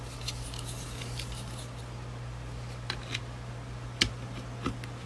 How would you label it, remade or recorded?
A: recorded